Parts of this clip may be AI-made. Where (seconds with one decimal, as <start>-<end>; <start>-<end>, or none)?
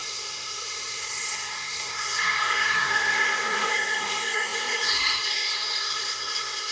0.0-6.7